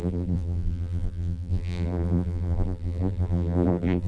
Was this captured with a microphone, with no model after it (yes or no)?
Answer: no